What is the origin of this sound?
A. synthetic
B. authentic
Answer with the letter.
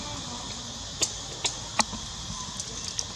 B